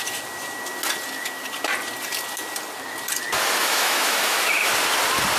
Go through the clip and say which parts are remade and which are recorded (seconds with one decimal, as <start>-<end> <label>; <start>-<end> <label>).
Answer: 0.0-3.6 recorded; 3.6-4.7 remade; 4.7-5.4 recorded